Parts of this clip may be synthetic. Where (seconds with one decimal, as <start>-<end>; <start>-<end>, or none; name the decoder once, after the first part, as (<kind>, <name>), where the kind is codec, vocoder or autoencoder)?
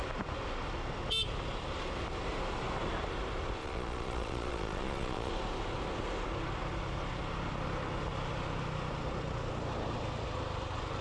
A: 3.6-5.3 (vocoder, Vocos)